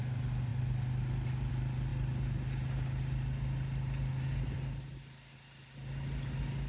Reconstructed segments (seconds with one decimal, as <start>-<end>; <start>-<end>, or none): none